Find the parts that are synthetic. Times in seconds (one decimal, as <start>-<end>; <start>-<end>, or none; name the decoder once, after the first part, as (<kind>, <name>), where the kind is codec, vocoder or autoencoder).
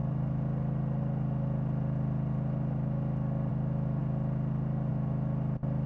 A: none